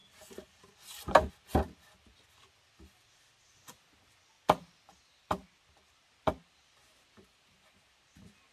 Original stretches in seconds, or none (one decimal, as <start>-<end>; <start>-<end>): 0.0-8.5